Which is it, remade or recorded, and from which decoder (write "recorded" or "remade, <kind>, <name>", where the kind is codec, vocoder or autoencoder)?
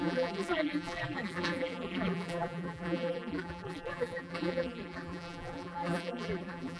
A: remade, vocoder, BigVGAN v2